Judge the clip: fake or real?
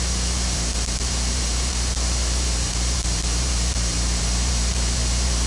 fake